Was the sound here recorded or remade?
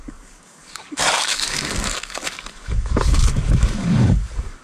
remade